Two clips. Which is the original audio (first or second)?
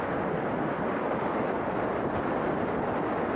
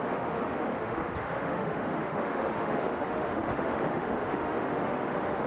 first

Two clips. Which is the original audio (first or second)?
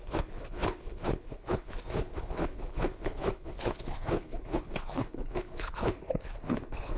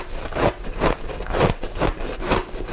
second